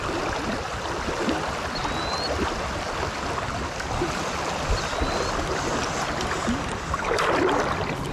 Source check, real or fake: real